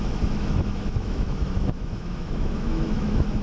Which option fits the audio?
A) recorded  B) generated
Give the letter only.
B